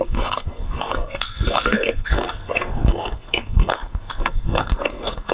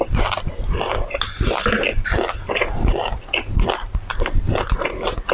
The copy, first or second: first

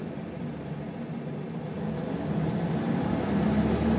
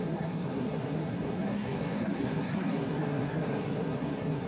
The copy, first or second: second